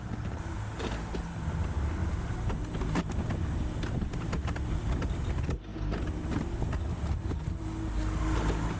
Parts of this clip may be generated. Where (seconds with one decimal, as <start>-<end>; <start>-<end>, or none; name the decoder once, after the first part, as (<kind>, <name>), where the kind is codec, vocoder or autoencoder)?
none